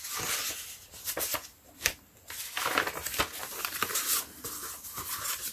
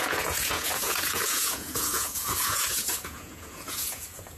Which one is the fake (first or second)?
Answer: second